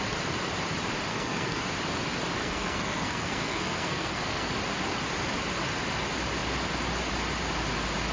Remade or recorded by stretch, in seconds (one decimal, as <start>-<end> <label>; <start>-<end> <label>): 0.0-1.1 recorded; 1.1-1.6 remade; 1.6-2.4 recorded; 2.4-4.5 remade; 4.5-8.1 recorded